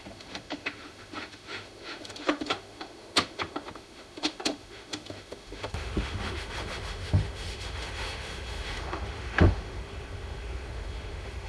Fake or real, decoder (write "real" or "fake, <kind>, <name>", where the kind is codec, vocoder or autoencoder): fake, autoencoder, DAC-VAE